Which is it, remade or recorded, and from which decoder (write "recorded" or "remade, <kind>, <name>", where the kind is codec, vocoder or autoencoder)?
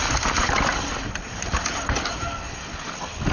recorded